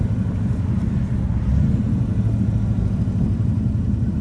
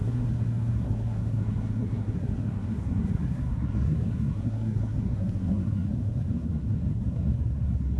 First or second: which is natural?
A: first